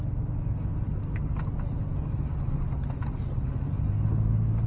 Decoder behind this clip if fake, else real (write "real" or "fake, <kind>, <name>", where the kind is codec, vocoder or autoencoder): real